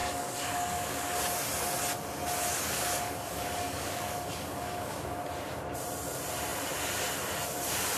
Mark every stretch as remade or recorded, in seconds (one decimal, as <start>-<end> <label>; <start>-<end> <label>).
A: 0.0-1.2 remade; 1.2-2.5 recorded; 2.5-5.2 remade; 5.2-8.0 recorded

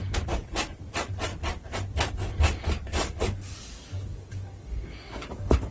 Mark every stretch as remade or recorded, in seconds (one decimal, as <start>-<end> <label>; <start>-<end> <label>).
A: 0.0-2.9 recorded; 2.9-5.7 remade

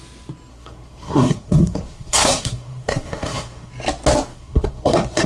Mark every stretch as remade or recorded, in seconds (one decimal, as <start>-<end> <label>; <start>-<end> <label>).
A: 0.0-0.5 recorded; 0.5-3.7 remade; 3.7-4.3 recorded; 4.3-5.3 remade

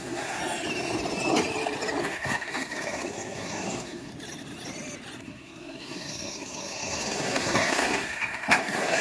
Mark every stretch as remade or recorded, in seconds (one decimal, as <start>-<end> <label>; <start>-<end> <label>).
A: 0.0-0.4 remade; 0.4-2.0 recorded; 2.0-4.1 remade; 4.1-5.2 recorded; 5.2-9.0 remade